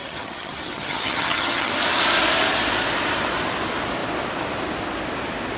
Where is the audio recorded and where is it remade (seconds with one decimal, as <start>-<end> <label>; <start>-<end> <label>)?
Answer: 0.0-1.7 remade; 1.7-5.6 recorded